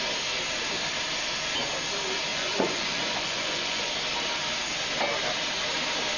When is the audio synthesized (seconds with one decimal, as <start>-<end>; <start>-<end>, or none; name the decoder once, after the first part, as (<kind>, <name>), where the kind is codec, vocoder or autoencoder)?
2.3-3.9 (vocoder, Vocos)